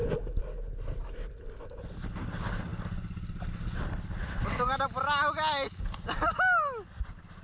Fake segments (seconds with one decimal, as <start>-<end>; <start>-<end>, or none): none